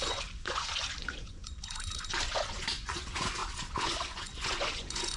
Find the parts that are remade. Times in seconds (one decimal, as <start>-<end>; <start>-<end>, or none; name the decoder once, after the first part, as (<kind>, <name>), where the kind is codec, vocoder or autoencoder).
0.0-5.2 (vocoder, Vocos)